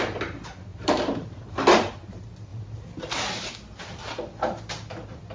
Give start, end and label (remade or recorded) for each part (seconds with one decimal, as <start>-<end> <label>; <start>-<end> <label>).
0.0-0.7 recorded; 0.7-1.9 remade; 1.9-2.5 recorded; 2.5-3.2 remade; 3.2-5.3 recorded